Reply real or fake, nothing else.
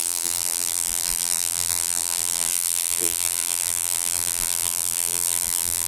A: fake